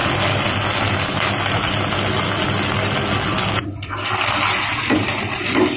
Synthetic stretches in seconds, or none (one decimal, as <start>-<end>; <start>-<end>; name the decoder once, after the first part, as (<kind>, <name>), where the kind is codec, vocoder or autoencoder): none